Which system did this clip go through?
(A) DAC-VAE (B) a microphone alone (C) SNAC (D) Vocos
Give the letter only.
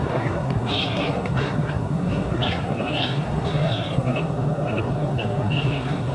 C